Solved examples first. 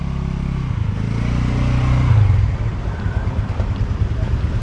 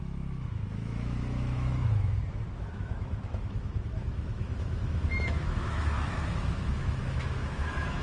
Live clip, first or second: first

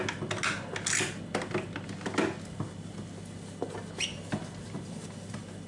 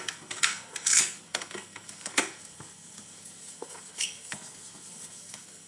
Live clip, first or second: first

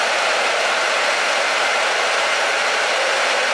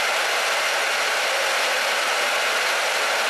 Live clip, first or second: second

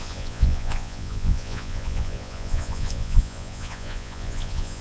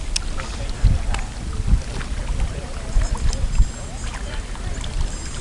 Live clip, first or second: second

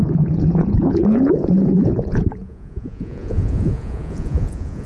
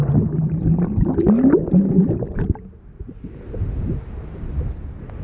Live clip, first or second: second